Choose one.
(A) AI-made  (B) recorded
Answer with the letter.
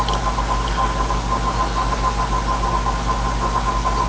B